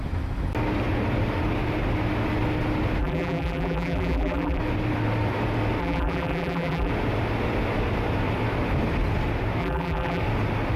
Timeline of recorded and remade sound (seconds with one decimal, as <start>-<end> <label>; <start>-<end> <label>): 0.0-3.0 recorded; 3.0-4.6 remade; 4.6-5.8 recorded; 5.8-6.9 remade; 6.9-9.6 recorded; 9.6-10.2 remade; 10.2-10.8 recorded